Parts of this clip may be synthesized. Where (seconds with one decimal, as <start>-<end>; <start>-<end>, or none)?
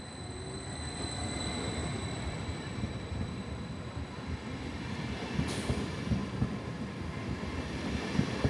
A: 1.8-4.1